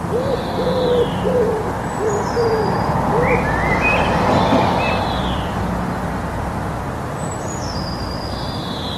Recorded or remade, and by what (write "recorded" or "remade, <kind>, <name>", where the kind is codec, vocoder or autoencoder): remade, vocoder, BigVGAN v2